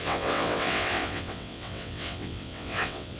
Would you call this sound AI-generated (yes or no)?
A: yes